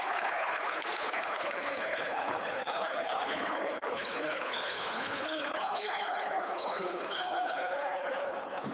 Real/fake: fake